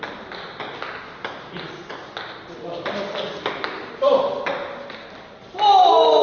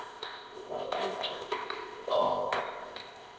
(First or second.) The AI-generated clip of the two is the second